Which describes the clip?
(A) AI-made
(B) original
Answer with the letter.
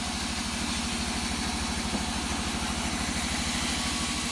B